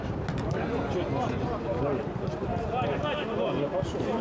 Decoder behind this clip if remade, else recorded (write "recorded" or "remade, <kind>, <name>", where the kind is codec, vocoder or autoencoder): recorded